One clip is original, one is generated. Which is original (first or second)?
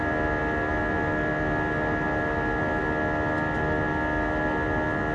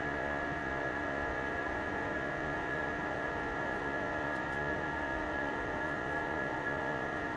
first